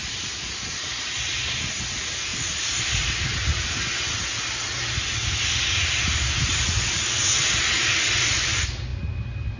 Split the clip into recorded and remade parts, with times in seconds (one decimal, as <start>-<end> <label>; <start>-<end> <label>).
0.0-9.6 recorded